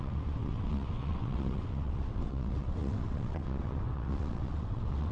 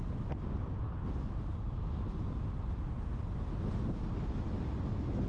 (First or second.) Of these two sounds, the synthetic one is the first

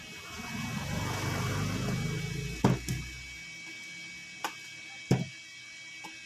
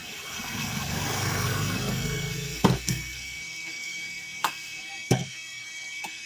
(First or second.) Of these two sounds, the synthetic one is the second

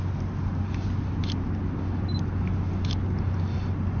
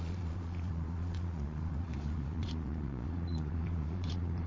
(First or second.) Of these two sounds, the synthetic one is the second